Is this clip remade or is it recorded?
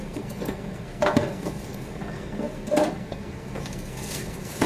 remade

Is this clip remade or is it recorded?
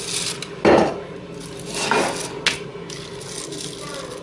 recorded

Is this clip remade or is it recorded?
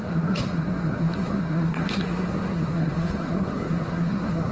remade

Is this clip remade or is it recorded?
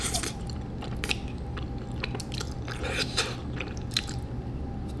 recorded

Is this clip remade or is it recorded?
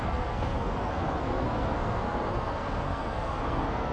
remade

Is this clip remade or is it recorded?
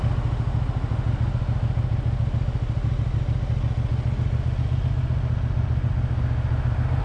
recorded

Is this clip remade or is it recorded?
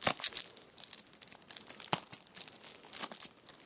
recorded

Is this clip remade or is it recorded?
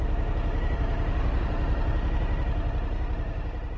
recorded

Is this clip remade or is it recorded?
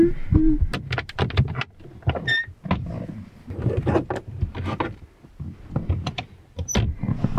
recorded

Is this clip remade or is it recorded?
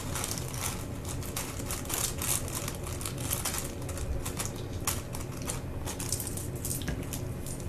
recorded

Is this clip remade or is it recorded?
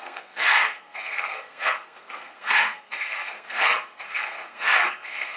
remade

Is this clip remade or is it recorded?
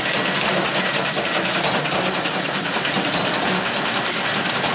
recorded